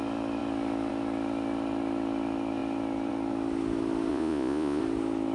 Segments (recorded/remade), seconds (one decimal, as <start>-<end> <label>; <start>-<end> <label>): 0.0-4.1 recorded; 4.1-4.8 remade; 4.8-5.3 recorded